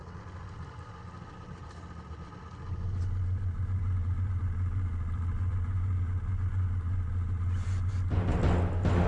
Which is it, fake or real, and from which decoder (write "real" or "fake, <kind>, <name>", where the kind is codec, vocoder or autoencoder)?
real